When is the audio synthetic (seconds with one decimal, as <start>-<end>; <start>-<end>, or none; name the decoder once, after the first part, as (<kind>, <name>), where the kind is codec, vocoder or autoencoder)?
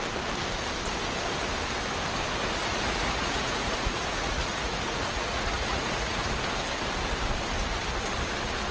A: 2.6-6.3 (vocoder, Vocos)